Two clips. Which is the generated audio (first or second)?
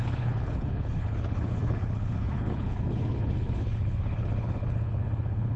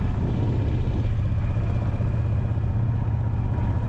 first